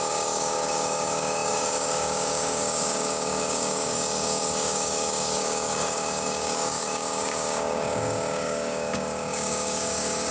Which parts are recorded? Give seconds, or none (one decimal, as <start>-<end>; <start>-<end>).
none